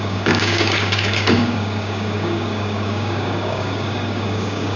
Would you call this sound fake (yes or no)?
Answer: yes